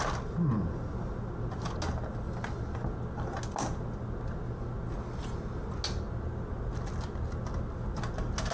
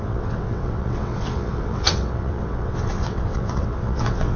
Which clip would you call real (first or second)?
first